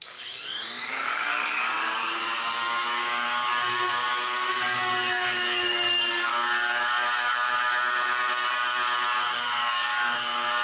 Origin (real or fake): fake